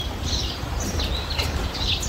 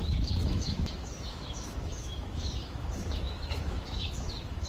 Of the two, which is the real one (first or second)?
first